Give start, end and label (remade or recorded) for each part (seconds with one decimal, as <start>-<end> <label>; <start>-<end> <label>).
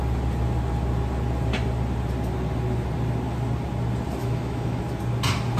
0.0-4.2 recorded; 4.2-4.8 remade; 4.8-5.6 recorded